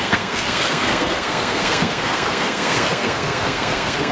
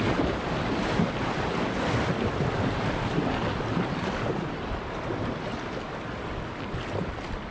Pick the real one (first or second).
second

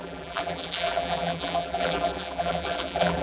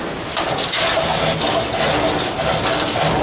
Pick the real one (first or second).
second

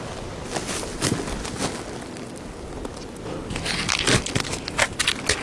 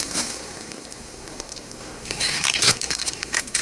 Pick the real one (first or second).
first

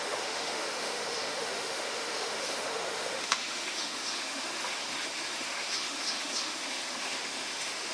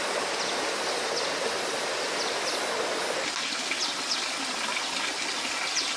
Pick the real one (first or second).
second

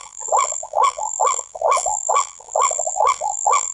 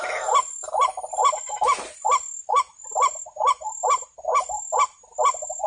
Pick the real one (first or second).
second